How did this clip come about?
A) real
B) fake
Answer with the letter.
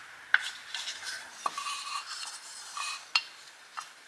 A